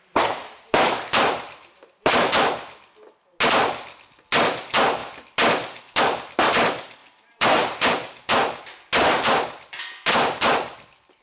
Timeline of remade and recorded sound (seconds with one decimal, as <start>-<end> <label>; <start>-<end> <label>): 0.0-0.4 recorded; 0.4-2.2 remade; 2.2-7.0 recorded; 7.0-7.9 remade; 7.9-11.2 recorded